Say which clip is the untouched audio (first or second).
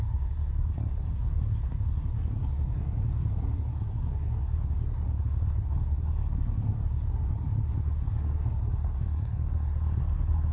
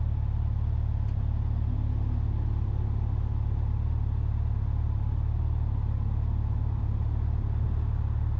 second